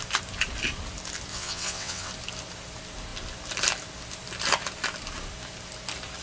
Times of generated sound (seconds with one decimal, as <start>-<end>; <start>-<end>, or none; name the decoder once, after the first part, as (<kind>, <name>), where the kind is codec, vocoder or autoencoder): 1.3-2.1 (vocoder, WaveNeXt)